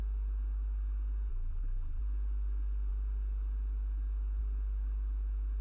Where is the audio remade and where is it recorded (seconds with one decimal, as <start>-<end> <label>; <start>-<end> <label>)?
0.0-1.3 recorded; 1.3-2.0 remade; 2.0-5.6 recorded